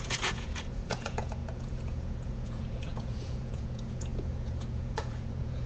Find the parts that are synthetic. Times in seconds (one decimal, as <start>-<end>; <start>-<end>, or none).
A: 0.0-5.7